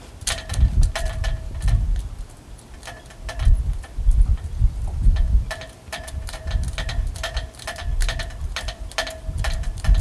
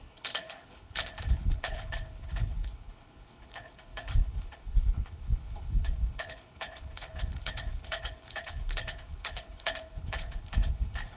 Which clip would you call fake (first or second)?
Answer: second